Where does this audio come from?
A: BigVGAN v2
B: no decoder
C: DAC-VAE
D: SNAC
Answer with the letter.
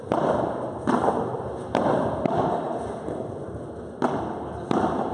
B